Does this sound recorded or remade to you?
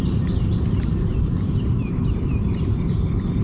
remade